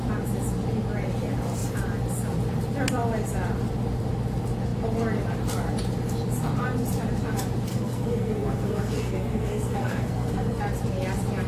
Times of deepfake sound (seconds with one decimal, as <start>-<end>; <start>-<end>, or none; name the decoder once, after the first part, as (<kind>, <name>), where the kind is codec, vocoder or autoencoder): 7.7-10.6 (codec, SNAC)

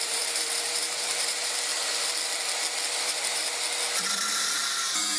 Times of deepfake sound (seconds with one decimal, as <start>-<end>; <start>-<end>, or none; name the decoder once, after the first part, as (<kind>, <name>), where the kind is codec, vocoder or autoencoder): 0.0-1.7 (vocoder, BigVGAN v2); 3.0-3.4; 4.8-5.2

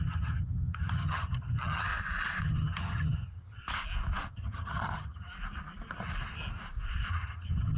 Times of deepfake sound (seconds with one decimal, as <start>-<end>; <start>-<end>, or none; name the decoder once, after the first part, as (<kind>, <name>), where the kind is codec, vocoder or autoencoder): 0.0-1.9 (vocoder, HiFi-GAN); 2.4-3.6; 4.3-5.3; 7.1-7.8

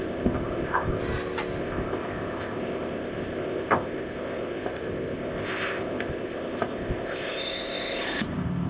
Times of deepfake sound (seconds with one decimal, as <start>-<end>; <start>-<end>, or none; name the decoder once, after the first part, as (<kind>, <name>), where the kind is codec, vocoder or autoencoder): 0.0-1.0 (codec, ZipCodec); 1.6-8.7